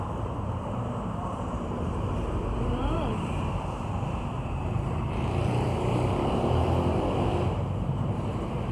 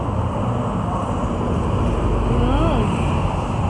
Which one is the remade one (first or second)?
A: first